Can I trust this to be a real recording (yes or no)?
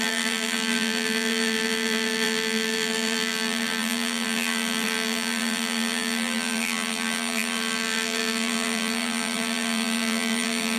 no